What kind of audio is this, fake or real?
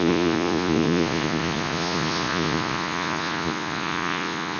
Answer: fake